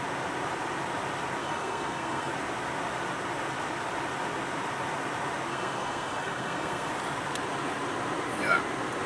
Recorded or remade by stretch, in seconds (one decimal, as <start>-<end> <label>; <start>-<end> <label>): 0.0-1.4 recorded; 1.4-2.3 remade; 2.3-5.5 recorded; 5.5-6.9 remade; 6.9-9.1 recorded